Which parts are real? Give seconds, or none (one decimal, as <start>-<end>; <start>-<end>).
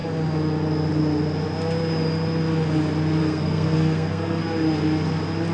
0.0-3.2; 4.4-5.5